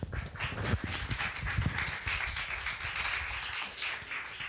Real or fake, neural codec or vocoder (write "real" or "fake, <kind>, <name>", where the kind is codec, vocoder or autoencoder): real